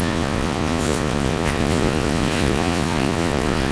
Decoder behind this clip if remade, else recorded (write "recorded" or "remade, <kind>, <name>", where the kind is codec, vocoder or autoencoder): remade, vocoder, Vocos